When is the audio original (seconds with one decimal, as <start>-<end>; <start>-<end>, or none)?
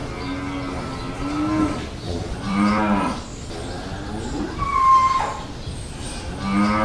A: 0.0-2.0; 2.7-6.8